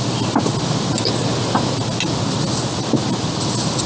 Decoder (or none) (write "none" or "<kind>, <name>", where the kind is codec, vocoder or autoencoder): none